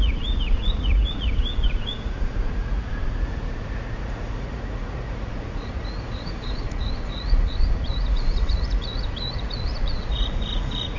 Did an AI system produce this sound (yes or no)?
yes